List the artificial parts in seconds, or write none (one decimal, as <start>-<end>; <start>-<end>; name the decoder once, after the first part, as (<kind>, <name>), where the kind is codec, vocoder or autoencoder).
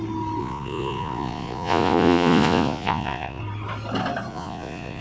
0.4-3.4 (vocoder, Vocos); 4.3-5.0